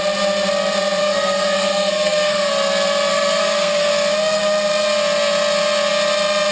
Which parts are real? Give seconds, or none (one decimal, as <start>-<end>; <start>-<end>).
0.0-1.0; 2.5-3.1; 3.9-6.5